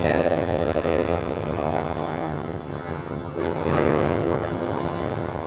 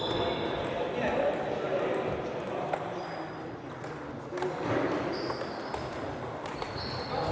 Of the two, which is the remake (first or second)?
first